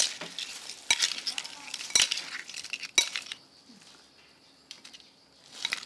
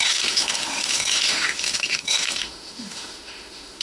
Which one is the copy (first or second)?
second